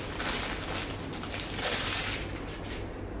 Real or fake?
real